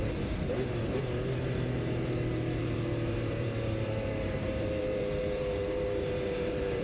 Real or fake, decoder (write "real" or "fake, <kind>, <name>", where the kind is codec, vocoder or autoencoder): fake, vocoder, BigVGAN v2